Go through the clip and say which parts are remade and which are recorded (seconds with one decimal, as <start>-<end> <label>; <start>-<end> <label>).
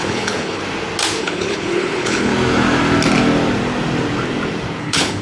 0.0-0.6 remade; 0.6-1.2 recorded; 1.2-2.3 remade; 2.3-4.8 recorded; 4.8-5.2 remade